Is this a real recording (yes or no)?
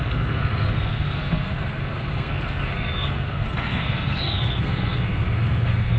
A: no